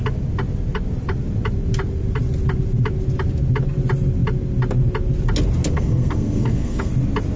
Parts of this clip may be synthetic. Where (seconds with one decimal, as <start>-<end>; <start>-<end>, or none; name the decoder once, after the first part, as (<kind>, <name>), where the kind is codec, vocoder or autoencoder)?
5.7-6.9 (codec, SNAC)